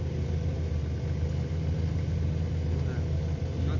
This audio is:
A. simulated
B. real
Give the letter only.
B